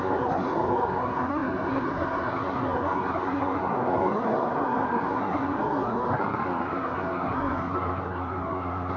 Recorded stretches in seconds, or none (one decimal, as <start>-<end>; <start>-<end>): none